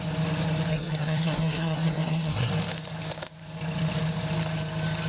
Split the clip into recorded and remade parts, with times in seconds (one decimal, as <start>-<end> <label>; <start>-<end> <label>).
0.0-0.7 recorded; 0.7-2.5 remade; 2.5-5.1 recorded